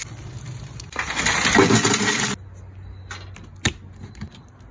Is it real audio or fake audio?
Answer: real